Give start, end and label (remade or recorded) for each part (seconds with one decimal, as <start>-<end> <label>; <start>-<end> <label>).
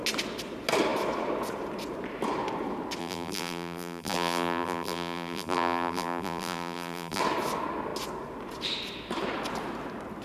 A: 0.0-3.0 recorded; 3.0-7.2 remade; 7.2-10.2 recorded